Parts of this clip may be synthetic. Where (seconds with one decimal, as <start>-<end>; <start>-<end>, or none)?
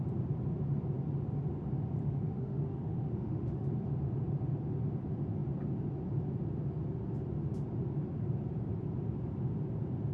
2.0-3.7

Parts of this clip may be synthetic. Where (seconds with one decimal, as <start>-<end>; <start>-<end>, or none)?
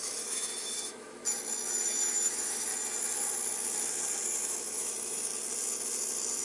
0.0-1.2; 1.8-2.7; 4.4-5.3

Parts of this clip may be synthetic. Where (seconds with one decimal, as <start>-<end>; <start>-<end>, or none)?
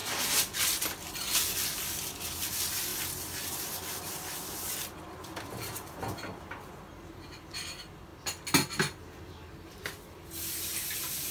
none